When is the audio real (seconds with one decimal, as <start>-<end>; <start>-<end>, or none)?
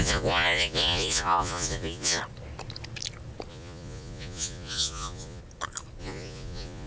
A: 2.2-3.5; 5.4-6.0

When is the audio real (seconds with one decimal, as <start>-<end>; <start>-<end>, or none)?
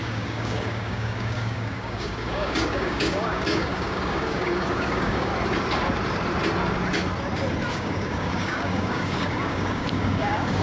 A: 5.3-7.7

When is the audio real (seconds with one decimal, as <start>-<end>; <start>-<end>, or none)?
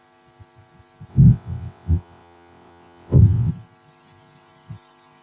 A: 0.0-1.1; 3.5-5.2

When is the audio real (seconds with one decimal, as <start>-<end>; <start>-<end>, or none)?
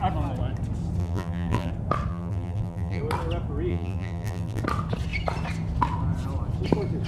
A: 0.0-1.0; 1.7-2.1; 3.0-3.7; 4.6-7.1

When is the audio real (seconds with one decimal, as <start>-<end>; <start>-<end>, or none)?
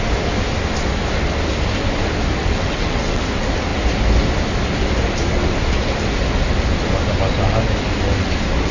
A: 0.0-2.4; 3.2-8.7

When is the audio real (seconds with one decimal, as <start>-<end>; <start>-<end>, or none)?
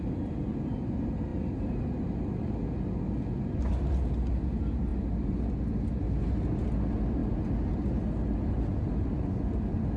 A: 0.0-10.0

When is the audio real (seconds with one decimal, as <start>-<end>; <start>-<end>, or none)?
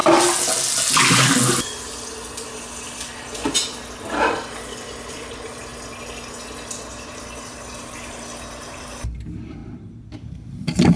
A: 0.0-5.1; 5.7-6.8